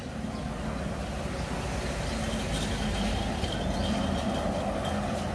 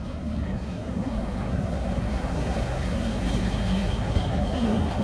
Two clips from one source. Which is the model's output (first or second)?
second